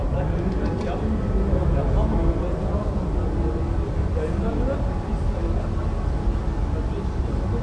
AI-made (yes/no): no